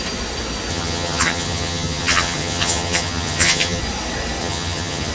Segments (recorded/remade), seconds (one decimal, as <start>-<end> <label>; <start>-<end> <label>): 0.0-0.7 recorded; 0.7-3.8 remade; 3.8-4.4 recorded; 4.4-5.1 remade